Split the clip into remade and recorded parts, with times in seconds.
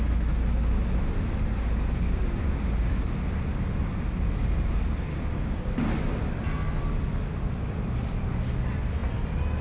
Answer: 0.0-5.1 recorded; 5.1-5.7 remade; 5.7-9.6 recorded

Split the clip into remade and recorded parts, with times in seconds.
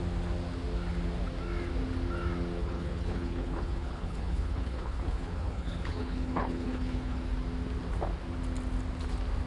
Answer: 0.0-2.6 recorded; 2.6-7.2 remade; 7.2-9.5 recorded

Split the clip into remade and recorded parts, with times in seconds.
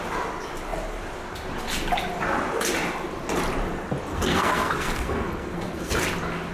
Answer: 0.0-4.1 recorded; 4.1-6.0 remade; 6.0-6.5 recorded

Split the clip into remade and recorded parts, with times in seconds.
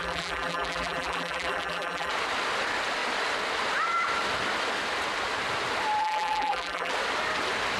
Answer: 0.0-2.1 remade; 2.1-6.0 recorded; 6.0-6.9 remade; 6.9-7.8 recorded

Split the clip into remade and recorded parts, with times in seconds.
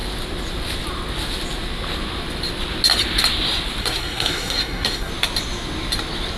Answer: 0.0-3.8 recorded; 3.8-5.1 remade; 5.1-6.4 recorded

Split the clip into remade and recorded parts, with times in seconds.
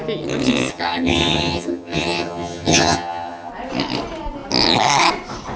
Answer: 0.0-0.7 recorded; 0.7-3.5 remade; 3.5-5.6 recorded